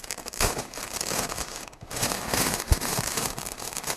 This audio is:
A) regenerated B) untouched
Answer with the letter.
A